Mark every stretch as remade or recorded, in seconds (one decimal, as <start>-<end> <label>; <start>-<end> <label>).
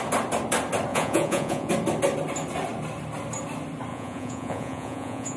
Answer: 0.0-0.9 recorded; 0.9-1.7 remade; 1.7-3.9 recorded; 3.9-5.4 remade